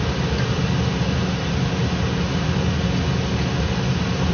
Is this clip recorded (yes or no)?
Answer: yes